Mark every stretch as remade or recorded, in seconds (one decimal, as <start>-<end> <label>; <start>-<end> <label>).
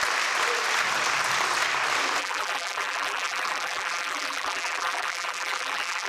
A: 0.0-2.2 recorded; 2.2-6.1 remade